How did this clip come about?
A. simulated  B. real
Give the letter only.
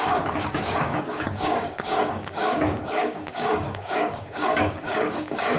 A